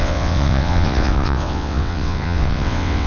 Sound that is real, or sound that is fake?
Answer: fake